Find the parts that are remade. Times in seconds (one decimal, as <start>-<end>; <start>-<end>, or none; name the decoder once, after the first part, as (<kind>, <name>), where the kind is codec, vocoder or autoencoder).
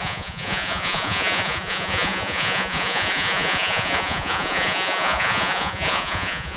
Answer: 0.0-6.6 (vocoder, Vocos)